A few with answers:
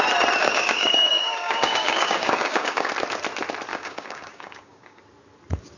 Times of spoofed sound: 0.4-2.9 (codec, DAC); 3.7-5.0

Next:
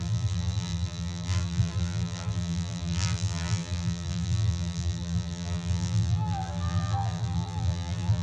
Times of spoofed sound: 0.0-8.2 (vocoder, BigVGAN v2)

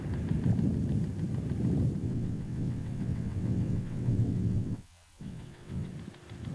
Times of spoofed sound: 2.0-5.9 (vocoder, WaveNeXt)

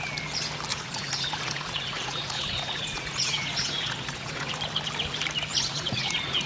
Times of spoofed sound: 0.7-4.6 (vocoder, Vocos); 5.5-6.5

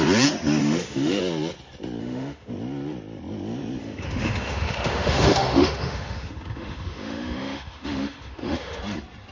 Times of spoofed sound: 0.6-1.2 (autoencoder, DAC-VAE); 2.0-2.5; 3.8-8.8